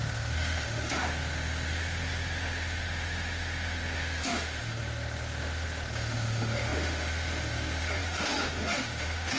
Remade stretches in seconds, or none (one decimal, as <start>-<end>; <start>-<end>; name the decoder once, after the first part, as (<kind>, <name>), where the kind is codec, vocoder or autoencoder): 0.0-9.4 (autoencoder, DAC-VAE)